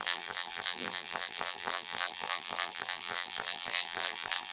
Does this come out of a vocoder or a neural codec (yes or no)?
yes